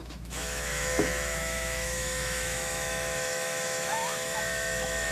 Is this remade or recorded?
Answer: remade